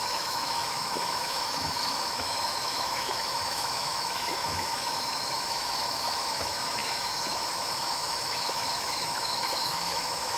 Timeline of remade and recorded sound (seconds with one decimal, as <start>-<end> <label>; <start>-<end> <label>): 0.0-10.4 remade